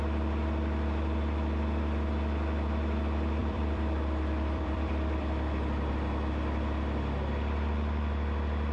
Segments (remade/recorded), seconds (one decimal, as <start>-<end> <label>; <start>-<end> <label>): 0.0-3.4 recorded; 3.4-5.9 remade; 5.9-8.7 recorded